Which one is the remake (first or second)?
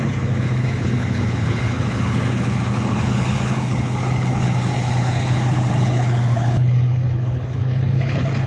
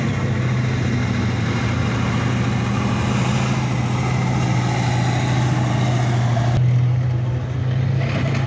first